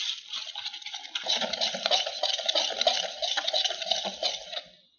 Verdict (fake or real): real